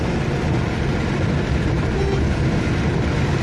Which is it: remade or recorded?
recorded